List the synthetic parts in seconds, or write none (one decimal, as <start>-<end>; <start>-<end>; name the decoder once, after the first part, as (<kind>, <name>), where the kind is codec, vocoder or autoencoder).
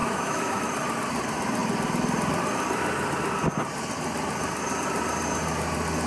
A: 0.0-0.6 (autoencoder, DAC-VAE)